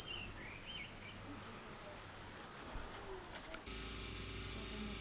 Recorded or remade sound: recorded